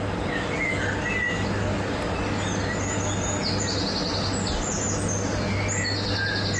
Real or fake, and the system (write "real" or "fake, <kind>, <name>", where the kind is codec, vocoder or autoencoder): real